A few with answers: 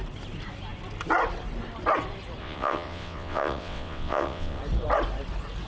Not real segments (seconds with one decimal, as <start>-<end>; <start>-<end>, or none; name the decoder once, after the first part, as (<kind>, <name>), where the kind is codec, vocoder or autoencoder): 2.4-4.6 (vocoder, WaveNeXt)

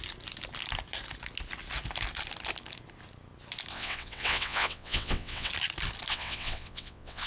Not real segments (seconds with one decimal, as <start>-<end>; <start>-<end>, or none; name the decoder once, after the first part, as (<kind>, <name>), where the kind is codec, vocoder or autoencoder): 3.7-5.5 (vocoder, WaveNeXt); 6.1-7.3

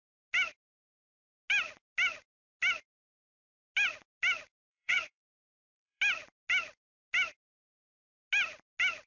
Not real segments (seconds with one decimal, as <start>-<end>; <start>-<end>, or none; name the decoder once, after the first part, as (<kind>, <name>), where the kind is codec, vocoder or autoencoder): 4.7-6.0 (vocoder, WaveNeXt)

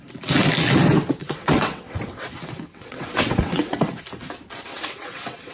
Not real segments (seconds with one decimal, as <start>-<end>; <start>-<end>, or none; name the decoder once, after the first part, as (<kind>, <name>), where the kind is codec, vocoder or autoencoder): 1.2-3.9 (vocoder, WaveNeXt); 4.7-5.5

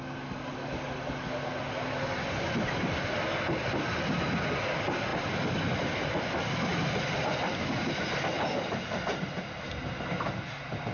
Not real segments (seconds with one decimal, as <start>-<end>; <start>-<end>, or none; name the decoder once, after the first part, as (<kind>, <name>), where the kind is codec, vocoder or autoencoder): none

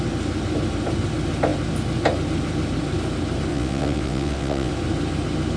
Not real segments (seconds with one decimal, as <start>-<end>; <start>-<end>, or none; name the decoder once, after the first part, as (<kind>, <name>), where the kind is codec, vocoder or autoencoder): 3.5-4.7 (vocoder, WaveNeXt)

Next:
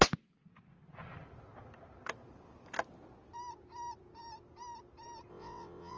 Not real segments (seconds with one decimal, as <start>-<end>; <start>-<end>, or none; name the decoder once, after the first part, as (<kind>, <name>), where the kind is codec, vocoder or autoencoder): 5.3-6.0 (vocoder, WaveNeXt)

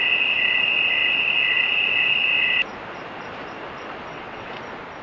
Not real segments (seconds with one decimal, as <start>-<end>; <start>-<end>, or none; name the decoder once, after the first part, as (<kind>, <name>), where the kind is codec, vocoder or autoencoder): 4.1-4.6 (vocoder, WaveNeXt)